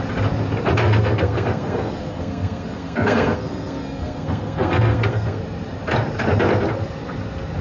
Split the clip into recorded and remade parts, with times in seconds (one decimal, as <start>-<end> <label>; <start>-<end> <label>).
0.0-0.8 recorded; 0.8-5.4 remade; 5.4-7.6 recorded